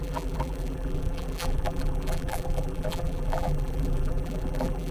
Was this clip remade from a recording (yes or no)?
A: yes